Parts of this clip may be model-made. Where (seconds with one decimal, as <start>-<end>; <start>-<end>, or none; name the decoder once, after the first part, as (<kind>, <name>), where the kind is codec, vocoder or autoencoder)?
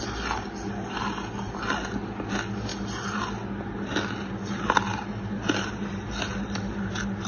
none